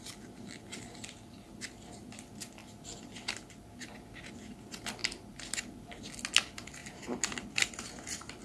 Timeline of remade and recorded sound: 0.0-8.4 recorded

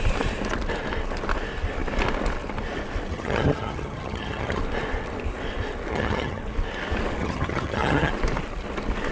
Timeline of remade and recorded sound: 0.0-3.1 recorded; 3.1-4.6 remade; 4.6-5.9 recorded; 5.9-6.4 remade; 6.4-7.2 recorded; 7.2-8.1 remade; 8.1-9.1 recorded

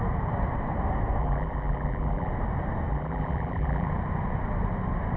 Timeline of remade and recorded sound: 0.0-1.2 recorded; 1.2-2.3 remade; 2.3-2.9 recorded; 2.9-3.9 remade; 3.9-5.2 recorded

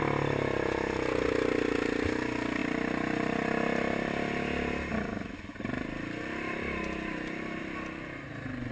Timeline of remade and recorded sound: 0.0-8.7 recorded

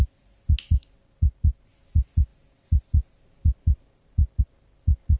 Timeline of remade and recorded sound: 0.0-5.2 recorded

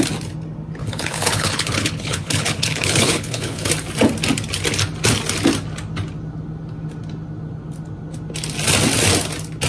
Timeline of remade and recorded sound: 0.0-0.8 recorded; 0.8-3.7 remade; 3.7-9.7 recorded

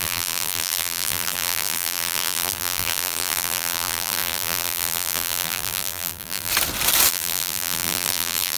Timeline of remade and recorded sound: 0.0-6.5 remade; 6.5-7.1 recorded; 7.1-8.6 remade